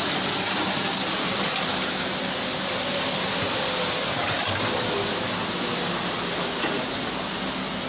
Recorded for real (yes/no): yes